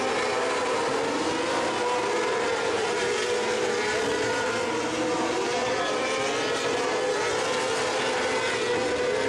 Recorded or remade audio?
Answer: recorded